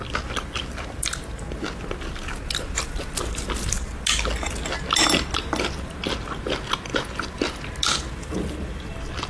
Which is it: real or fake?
real